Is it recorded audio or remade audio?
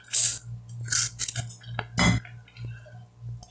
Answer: recorded